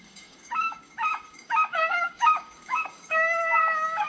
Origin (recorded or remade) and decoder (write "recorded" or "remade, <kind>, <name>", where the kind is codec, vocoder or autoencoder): remade, codec, DAC